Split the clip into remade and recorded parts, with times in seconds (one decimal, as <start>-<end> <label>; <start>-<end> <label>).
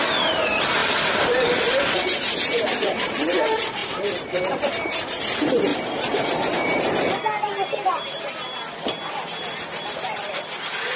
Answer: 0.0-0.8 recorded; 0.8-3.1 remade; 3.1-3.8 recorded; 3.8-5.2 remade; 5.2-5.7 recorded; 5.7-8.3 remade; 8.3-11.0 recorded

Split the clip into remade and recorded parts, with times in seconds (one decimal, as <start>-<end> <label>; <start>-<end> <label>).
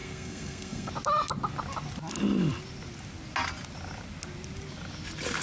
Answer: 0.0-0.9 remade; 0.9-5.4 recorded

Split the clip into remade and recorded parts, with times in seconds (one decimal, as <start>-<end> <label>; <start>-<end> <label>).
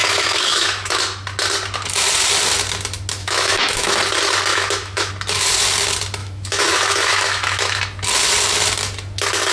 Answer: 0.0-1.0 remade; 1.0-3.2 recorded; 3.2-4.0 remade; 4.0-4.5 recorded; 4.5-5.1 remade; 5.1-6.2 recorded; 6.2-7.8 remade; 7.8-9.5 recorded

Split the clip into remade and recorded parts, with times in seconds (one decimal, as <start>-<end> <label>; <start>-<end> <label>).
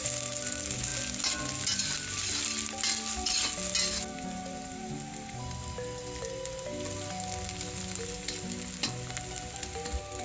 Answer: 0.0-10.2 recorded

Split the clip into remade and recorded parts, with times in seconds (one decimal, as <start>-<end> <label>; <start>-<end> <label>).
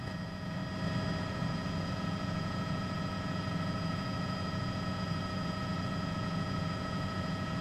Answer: 0.0-0.6 remade; 0.6-1.2 recorded; 1.2-7.6 remade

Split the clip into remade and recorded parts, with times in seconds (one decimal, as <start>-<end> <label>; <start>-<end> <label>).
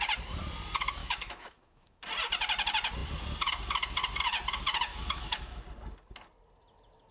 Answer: 0.0-1.0 recorded; 1.0-2.0 remade; 2.0-4.9 recorded; 4.9-5.6 remade; 5.6-7.1 recorded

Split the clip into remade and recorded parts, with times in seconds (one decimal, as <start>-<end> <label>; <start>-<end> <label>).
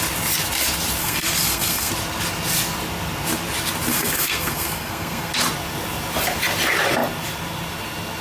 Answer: 0.0-1.0 recorded; 1.0-1.9 remade; 1.9-3.9 recorded; 3.9-5.3 remade; 5.3-8.2 recorded